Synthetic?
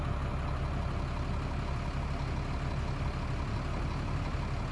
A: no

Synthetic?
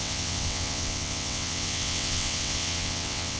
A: yes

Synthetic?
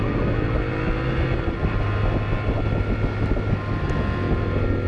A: no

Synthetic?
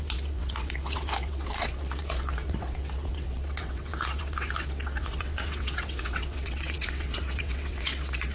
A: yes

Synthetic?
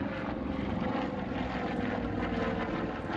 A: no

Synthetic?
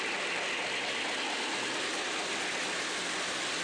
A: no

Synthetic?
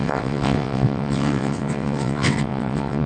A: yes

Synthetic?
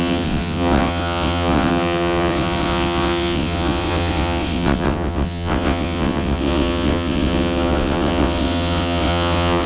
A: yes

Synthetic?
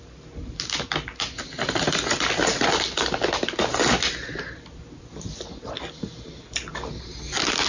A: no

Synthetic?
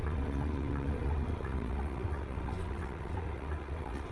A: yes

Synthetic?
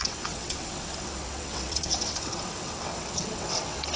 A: yes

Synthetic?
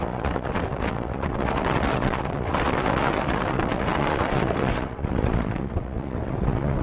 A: yes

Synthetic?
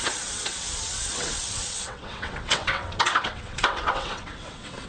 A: yes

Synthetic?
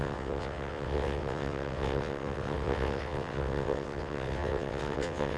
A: yes